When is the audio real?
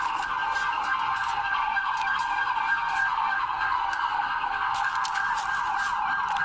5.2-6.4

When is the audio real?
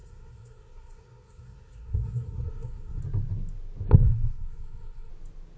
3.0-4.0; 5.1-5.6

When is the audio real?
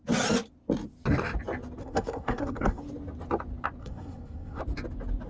0.0-1.8; 2.8-3.8; 4.6-5.3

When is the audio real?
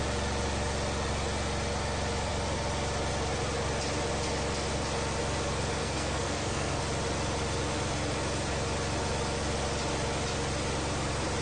0.0-5.8; 6.8-11.4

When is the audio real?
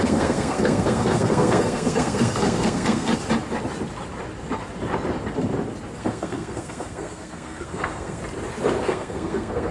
3.1-6.0; 8.2-8.8